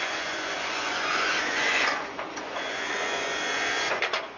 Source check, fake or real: fake